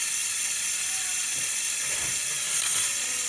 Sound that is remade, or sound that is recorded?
recorded